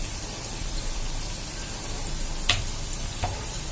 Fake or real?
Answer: fake